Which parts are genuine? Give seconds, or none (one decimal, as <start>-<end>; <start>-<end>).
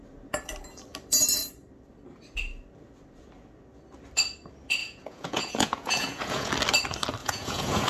0.0-4.8; 6.5-7.2